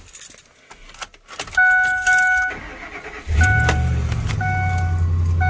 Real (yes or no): yes